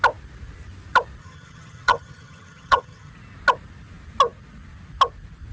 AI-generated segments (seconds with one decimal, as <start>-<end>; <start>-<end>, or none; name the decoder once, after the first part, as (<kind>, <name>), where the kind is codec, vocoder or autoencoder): 1.2-3.1 (vocoder, HiFi-GAN)

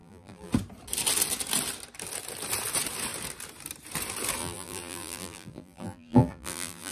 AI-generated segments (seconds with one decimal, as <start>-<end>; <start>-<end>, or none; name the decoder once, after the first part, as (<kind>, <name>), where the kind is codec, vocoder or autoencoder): 0.0-0.5 (vocoder, BigVGAN v2); 4.4-6.9

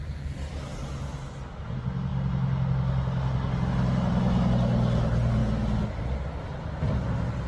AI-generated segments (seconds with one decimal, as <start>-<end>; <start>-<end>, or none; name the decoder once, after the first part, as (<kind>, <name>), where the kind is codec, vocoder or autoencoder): none

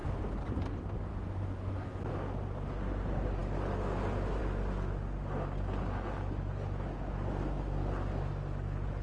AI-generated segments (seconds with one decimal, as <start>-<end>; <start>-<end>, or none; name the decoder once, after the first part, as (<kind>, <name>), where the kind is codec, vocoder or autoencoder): 1.1-2.1 (autoencoder, DAC-VAE)

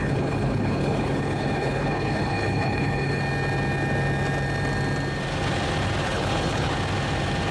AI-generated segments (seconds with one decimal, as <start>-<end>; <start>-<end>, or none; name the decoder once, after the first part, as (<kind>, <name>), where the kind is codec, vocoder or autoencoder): 0.0-3.2 (codec, HILCodec); 6.0-6.7

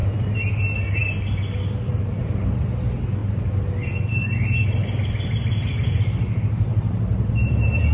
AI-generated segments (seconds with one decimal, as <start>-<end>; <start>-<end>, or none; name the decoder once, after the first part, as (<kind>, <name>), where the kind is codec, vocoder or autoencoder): 0.0-0.6 (vocoder, BigVGAN v2); 3.2-7.9